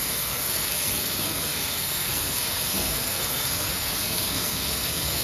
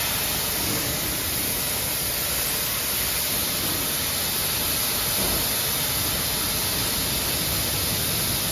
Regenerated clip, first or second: first